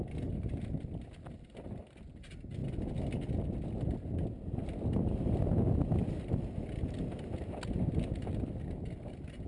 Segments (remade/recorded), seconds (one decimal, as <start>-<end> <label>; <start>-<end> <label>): 0.0-9.5 recorded